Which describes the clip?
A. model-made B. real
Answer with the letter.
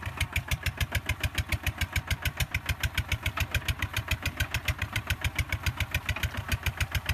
A